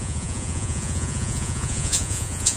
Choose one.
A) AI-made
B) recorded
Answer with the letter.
A